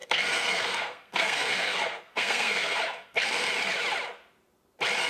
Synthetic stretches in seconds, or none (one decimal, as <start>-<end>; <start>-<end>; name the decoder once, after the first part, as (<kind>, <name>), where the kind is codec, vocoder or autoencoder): 0.0-3.5 (codec, SNAC)